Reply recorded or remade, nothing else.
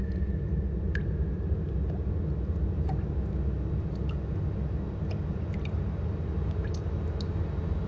recorded